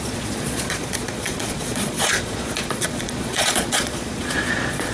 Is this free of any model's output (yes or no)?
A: no